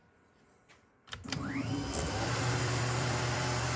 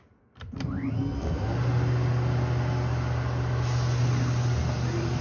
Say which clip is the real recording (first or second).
second